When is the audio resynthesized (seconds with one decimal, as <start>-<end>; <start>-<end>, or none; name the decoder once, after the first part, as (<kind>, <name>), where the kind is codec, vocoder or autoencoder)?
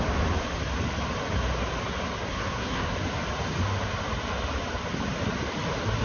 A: 2.3-2.9 (codec, SNAC)